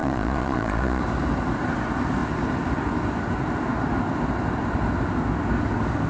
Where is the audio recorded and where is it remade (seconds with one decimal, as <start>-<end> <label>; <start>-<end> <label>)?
0.0-1.0 remade; 1.0-6.1 recorded